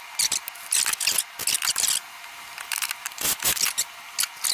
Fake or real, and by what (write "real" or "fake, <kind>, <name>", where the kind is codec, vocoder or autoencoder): real